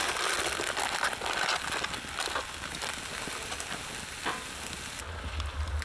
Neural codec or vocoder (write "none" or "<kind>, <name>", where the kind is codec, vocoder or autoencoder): none